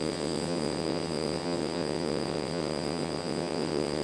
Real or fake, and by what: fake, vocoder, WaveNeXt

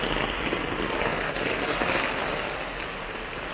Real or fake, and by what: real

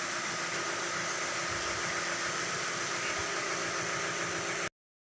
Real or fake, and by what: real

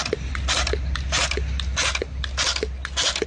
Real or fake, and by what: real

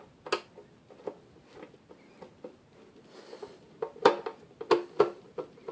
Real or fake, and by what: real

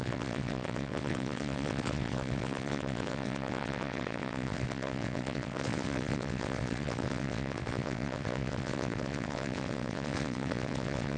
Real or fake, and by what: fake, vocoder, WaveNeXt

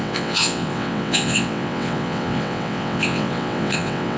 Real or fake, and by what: fake, vocoder, WaveNeXt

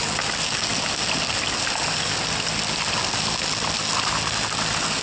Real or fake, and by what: real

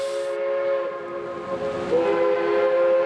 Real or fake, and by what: real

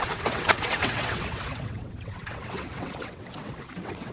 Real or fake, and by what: fake, vocoder, WaveNeXt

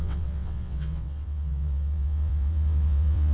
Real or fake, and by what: fake, vocoder, WaveNeXt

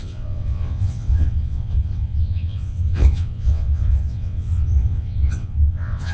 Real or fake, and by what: fake, vocoder, WaveNeXt